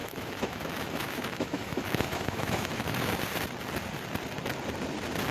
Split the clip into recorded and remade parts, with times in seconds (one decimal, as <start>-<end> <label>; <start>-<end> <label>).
0.0-3.2 remade; 3.2-5.3 recorded